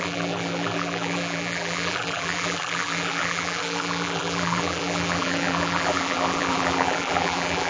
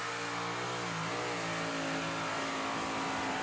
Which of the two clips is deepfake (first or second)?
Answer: first